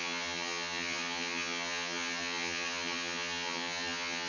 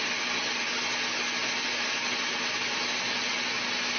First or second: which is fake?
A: first